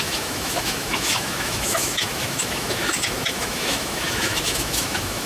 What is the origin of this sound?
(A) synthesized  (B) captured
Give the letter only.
A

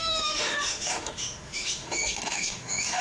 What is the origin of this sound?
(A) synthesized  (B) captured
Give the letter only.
A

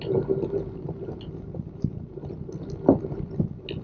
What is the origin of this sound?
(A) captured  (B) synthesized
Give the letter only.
A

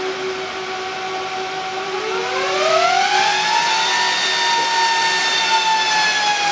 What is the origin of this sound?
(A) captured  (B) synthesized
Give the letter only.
A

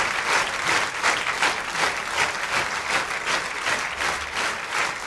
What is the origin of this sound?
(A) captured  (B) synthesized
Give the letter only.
A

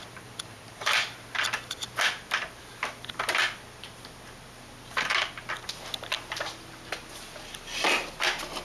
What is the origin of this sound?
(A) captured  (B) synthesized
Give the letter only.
A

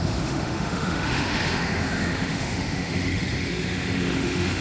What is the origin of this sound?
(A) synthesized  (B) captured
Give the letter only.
A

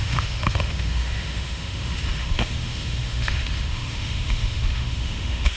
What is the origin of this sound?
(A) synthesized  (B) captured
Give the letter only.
A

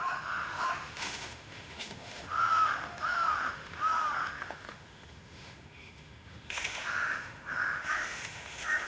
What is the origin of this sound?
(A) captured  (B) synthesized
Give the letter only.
B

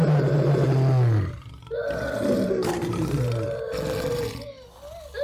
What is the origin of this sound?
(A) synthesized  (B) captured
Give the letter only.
B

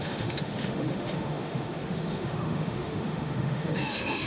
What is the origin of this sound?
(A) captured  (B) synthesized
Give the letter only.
B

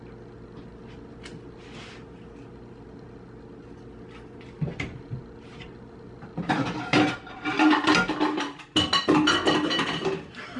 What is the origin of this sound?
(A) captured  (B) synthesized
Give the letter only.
A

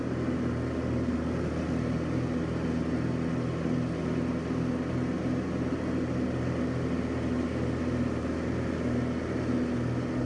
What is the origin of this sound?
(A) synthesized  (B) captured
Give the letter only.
B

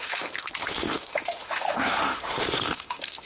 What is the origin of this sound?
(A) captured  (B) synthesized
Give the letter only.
B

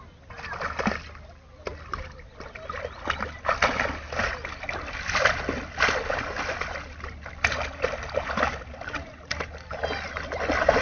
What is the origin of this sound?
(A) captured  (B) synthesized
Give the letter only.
A